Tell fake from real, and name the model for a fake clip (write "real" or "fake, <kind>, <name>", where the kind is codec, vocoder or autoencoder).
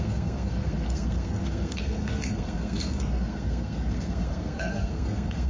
fake, codec, SNAC